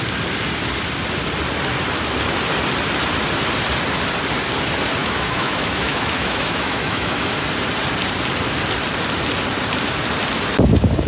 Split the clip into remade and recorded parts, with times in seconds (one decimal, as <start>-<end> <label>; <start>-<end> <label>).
0.0-5.0 recorded; 5.0-7.4 remade; 7.4-11.1 recorded